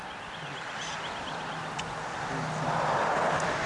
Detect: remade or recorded recorded